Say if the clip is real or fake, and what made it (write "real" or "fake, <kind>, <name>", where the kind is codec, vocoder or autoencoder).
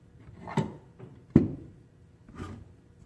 fake, vocoder, BigVGAN v2